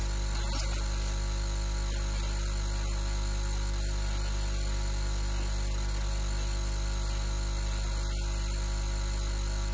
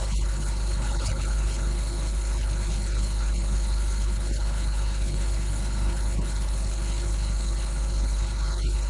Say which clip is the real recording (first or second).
first